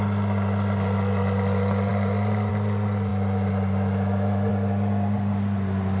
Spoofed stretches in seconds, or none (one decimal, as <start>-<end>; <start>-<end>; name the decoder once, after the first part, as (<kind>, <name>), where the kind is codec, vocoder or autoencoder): none